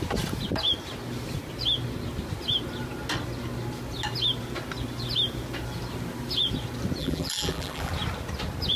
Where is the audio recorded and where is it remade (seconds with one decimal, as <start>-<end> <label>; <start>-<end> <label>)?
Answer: 0.0-7.0 recorded; 7.0-7.9 remade; 7.9-8.8 recorded